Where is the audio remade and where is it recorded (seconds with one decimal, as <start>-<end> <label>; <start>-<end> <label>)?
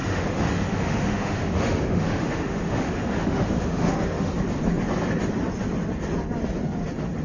0.0-4.3 remade; 4.3-7.2 recorded